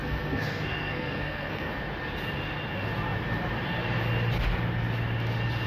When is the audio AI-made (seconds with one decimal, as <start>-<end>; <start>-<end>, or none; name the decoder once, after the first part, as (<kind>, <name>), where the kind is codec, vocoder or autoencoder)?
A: 0.0-1.7 (codec, SNAC)